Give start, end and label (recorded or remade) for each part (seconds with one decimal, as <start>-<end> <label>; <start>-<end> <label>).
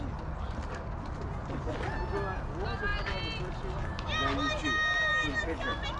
0.0-6.0 recorded